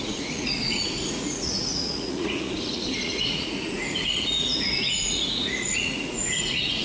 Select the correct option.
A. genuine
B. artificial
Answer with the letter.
B